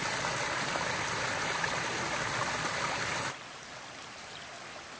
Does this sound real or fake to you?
real